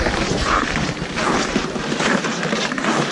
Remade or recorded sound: remade